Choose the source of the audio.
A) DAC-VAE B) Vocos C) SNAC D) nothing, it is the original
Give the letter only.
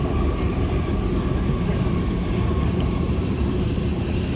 D